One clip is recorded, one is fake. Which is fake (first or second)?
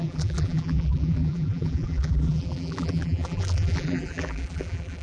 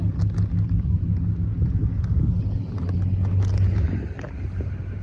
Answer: first